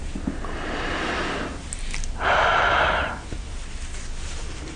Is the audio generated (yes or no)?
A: no